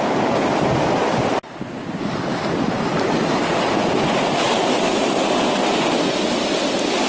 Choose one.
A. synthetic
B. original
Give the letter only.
B